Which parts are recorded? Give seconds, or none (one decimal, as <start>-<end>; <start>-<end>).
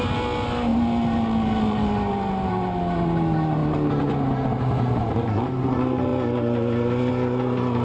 0.0-7.8